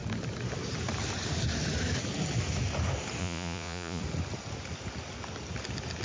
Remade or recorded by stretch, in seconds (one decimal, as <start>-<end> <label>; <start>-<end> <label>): 0.0-3.2 recorded; 3.2-4.0 remade; 4.0-6.0 recorded